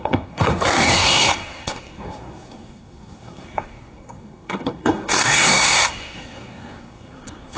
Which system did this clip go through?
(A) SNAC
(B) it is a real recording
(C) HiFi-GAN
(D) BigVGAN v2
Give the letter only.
A